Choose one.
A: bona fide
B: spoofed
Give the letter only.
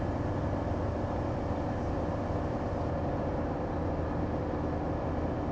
A